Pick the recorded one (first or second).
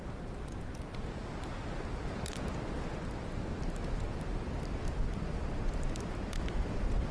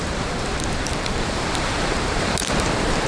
first